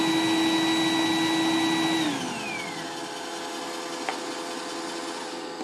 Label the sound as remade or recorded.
recorded